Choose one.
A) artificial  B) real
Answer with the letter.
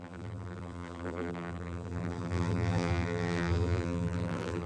A